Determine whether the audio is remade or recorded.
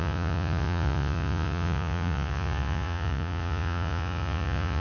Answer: remade